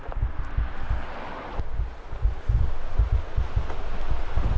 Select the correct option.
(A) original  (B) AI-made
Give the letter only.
A